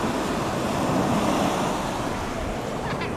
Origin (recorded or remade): recorded